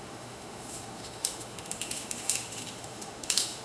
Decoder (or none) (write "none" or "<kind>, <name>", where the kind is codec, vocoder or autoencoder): autoencoder, DAC-VAE